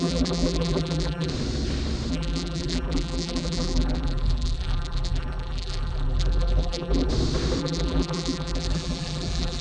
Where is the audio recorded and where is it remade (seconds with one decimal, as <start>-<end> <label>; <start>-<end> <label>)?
0.0-1.3 remade; 1.3-2.1 recorded; 2.1-7.1 remade; 7.1-7.6 recorded; 7.6-9.6 remade